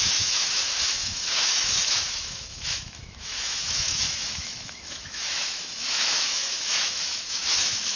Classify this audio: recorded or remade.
remade